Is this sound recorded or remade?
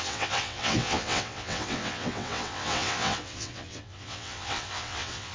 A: remade